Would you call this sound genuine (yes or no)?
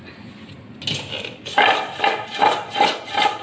yes